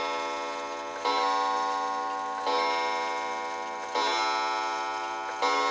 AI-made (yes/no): no